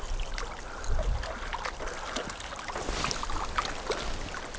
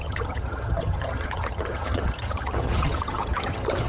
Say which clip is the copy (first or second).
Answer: second